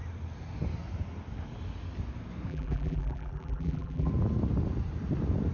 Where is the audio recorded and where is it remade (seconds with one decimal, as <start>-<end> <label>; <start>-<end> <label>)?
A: 0.0-2.5 recorded; 2.5-4.1 remade; 4.1-5.5 recorded